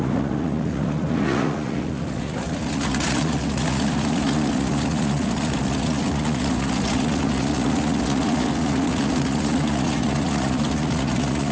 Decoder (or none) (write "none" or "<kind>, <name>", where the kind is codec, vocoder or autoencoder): vocoder, Vocos